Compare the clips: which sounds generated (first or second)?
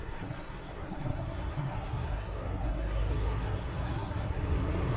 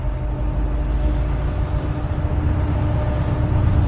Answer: first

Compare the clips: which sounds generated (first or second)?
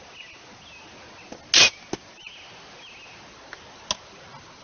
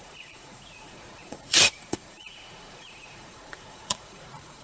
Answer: second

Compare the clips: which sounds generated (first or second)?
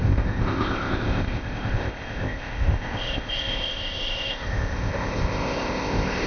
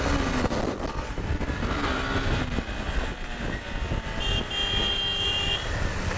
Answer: first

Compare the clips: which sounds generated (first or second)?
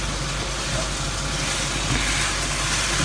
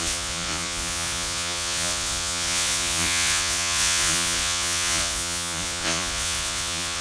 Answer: second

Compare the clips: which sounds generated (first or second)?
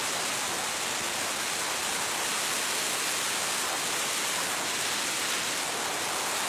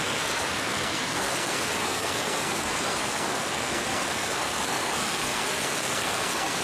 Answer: second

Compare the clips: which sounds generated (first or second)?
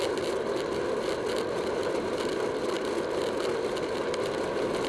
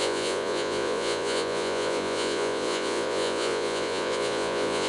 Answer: second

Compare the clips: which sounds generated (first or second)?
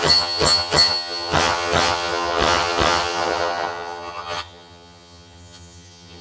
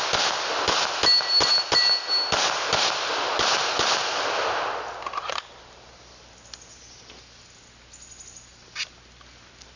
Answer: first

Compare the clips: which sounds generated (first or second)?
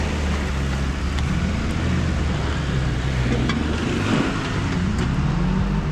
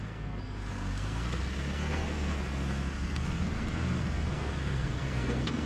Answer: second